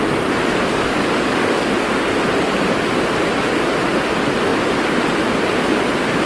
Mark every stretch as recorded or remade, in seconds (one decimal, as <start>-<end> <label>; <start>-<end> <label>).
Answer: 0.0-0.7 recorded; 0.7-1.7 remade; 1.7-6.3 recorded